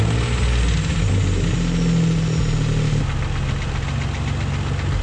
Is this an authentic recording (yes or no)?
yes